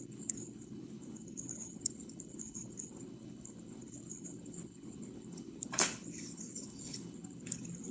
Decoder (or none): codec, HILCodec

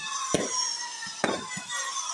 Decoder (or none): none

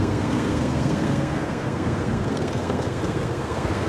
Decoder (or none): codec, SNAC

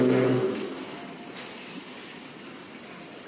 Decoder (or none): none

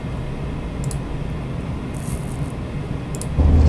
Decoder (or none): none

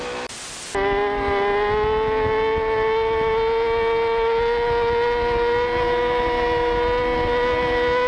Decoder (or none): none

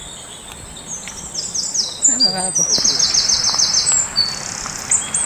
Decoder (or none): none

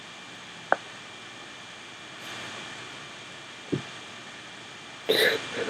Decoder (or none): none